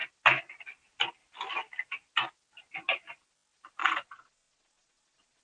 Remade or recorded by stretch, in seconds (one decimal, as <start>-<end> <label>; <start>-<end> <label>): 0.0-3.8 recorded; 3.8-5.4 remade